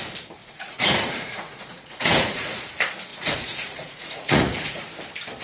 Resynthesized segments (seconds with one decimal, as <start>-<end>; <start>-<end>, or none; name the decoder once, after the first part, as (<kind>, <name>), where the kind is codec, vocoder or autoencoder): 0.4-2.7 (vocoder, Vocos); 3.1-4.8